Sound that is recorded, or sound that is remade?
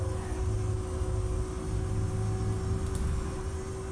recorded